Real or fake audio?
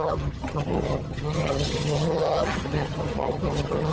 fake